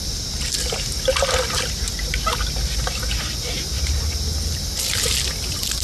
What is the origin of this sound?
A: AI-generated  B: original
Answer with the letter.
B